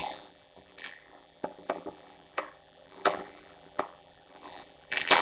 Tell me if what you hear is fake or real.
fake